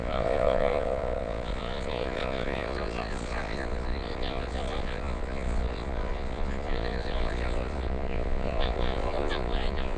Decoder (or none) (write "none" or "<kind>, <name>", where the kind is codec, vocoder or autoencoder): vocoder, Vocos